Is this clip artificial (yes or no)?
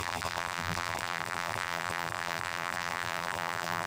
yes